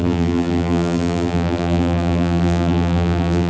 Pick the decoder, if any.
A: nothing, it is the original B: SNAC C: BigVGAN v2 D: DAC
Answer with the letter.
C